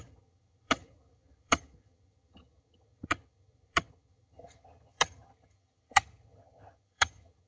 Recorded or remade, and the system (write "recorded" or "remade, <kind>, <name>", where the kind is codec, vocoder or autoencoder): remade, vocoder, HiFi-GAN